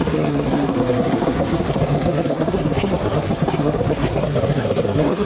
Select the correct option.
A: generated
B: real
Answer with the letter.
A